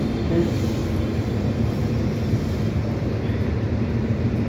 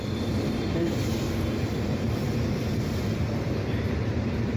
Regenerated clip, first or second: second